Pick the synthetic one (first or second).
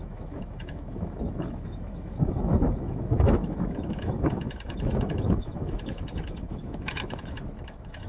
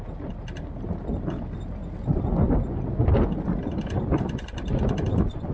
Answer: first